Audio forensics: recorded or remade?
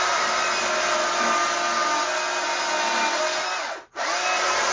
recorded